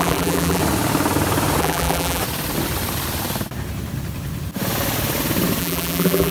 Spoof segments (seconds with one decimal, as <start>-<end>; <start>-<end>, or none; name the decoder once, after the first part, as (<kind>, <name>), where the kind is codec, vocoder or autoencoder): 0.0-0.6 (vocoder, BigVGAN v2); 1.6-2.2; 5.6-6.3